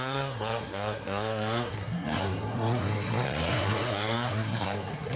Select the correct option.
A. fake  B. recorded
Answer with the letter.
A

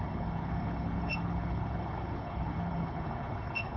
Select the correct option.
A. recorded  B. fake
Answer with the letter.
B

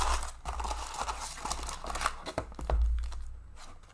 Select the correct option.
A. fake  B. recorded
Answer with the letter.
B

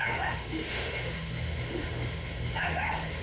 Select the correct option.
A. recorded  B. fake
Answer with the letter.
B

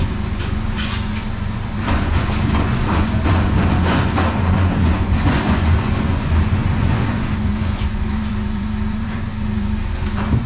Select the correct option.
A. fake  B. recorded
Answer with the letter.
A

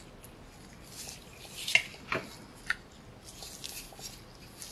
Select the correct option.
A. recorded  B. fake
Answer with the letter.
A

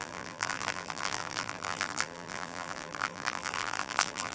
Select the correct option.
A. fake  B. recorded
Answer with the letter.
A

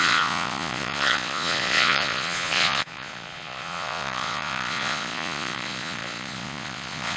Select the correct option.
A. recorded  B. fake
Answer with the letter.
B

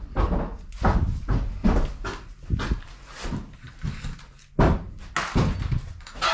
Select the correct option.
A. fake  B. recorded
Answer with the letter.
B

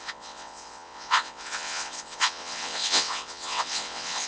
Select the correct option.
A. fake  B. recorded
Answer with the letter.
A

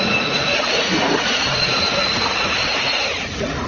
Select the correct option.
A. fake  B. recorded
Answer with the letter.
A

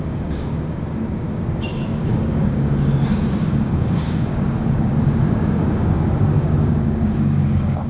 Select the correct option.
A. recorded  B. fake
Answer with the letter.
B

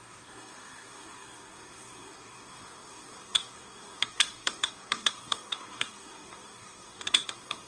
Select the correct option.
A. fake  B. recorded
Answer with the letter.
A